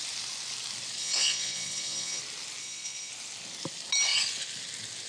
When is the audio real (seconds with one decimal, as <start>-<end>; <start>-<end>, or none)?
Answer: 0.0-1.0; 2.2-2.6; 3.1-5.1